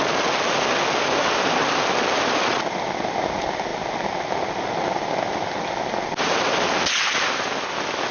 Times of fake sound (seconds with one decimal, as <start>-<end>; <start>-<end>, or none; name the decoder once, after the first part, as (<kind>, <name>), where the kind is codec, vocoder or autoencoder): none